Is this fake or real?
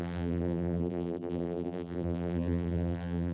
fake